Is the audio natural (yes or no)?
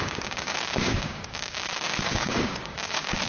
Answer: no